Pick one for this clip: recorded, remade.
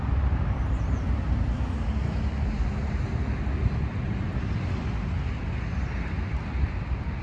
recorded